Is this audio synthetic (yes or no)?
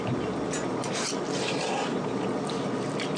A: no